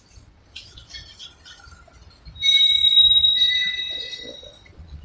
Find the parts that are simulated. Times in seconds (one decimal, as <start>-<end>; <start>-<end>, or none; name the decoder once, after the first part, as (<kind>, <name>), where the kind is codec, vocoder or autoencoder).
0.0-1.0 (vocoder, Vocos); 4.0-5.0